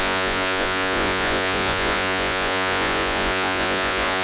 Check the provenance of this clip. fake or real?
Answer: fake